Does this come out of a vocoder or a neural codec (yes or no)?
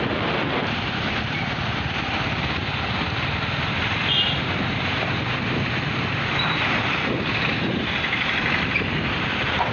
yes